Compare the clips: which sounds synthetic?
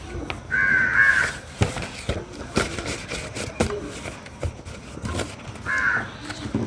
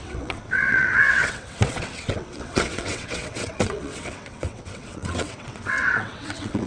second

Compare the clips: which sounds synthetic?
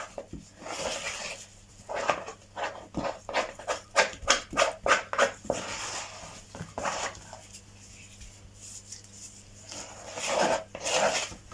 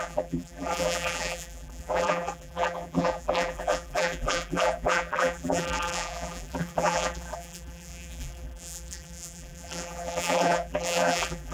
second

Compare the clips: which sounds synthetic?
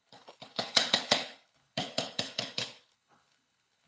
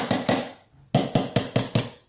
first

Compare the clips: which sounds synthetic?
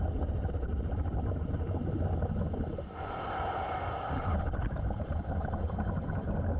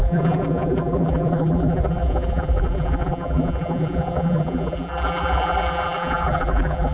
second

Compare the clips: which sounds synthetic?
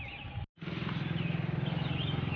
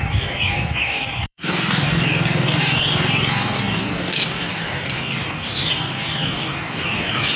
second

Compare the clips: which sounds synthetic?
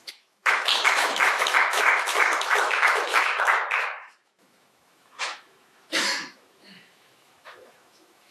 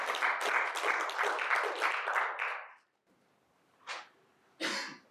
first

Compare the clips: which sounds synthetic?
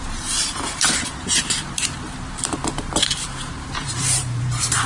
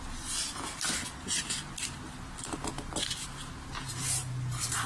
first